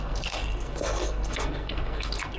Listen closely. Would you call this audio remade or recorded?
remade